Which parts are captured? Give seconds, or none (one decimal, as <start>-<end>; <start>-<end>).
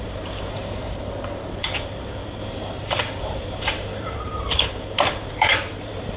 2.2-2.8